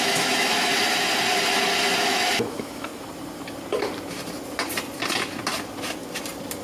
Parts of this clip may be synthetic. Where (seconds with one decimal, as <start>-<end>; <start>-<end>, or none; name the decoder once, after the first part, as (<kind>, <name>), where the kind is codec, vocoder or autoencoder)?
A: 0.0-0.7 (autoencoder, DAC-VAE); 2.0-2.9